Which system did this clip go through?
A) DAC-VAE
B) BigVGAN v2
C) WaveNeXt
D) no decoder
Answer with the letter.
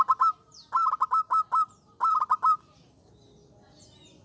D